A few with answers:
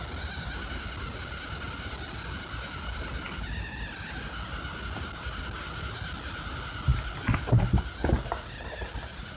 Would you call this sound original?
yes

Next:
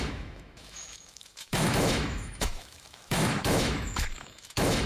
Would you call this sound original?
no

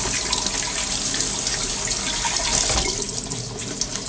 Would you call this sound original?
yes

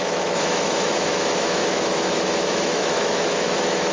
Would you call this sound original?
no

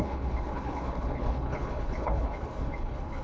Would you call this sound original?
no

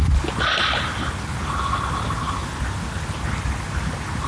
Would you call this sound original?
yes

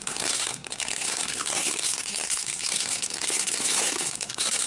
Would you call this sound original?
no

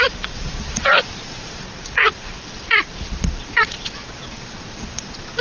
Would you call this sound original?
no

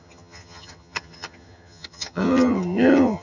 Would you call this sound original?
no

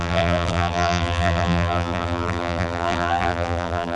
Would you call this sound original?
no